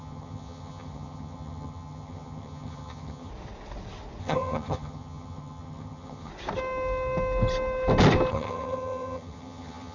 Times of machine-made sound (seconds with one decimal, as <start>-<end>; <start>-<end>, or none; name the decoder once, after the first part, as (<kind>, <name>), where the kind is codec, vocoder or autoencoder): 0.0-3.3 (vocoder, HiFi-GAN); 4.2-6.3; 8.3-9.9